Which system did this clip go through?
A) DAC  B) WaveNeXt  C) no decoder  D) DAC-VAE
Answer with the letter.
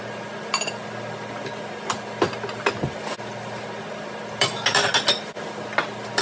C